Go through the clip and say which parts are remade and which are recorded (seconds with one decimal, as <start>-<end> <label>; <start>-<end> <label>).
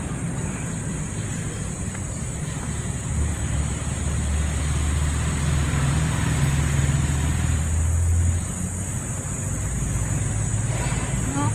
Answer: 0.0-11.5 recorded